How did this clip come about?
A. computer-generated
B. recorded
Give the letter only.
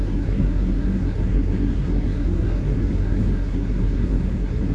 A